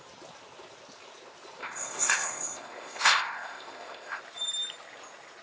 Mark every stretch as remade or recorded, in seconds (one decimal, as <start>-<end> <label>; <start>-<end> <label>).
0.0-1.6 recorded; 1.6-4.2 remade; 4.2-5.4 recorded